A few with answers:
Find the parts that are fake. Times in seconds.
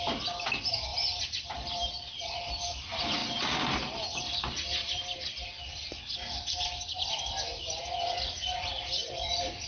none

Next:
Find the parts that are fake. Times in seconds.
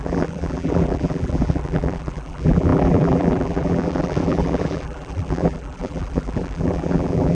0.0-7.3 (vocoder, BigVGAN v2)